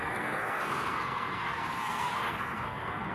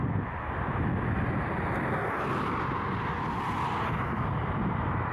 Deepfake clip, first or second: first